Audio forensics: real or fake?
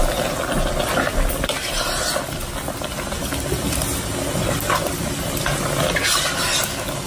real